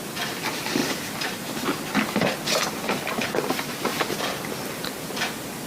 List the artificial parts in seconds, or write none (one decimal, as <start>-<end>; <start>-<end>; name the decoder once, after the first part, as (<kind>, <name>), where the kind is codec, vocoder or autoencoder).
none